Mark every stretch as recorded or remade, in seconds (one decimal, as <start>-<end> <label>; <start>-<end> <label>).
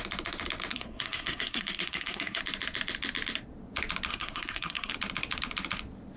0.0-0.7 recorded; 0.7-2.4 remade; 2.4-4.1 recorded; 4.1-4.9 remade; 4.9-6.2 recorded